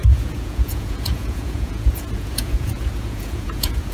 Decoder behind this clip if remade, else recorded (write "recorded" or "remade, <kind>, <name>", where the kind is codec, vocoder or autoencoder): remade, vocoder, Vocos